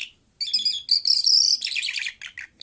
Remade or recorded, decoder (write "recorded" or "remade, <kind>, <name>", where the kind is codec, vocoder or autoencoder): recorded